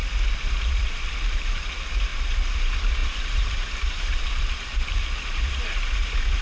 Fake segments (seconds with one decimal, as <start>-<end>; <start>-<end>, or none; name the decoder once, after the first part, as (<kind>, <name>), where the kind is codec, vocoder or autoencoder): 1.2-2.1 (vocoder, BigVGAN v2); 2.6-6.4